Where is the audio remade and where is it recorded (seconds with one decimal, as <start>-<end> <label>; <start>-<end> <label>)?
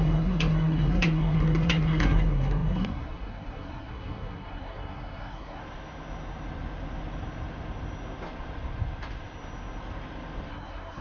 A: 0.0-5.6 remade; 5.6-10.5 recorded; 10.5-11.0 remade